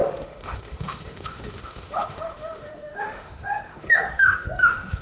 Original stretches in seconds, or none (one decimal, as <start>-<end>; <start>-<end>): none